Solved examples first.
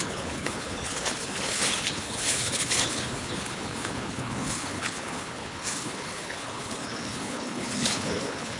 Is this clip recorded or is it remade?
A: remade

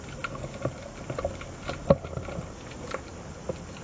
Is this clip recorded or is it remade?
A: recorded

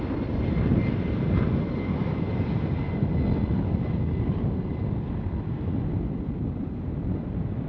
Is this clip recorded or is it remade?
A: recorded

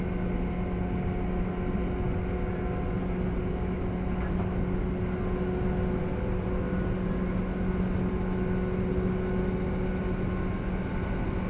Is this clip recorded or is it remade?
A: recorded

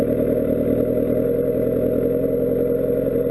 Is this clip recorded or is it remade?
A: recorded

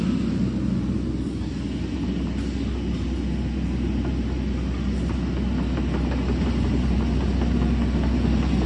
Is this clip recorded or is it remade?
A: recorded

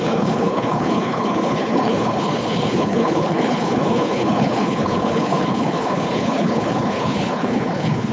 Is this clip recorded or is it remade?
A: remade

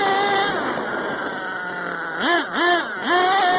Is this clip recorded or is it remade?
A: recorded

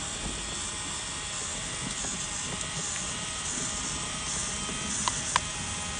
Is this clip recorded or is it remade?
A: recorded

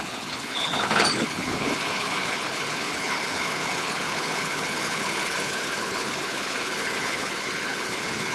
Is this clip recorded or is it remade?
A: remade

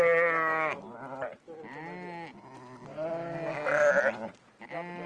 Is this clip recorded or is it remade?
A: recorded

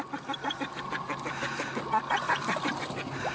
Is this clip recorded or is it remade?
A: recorded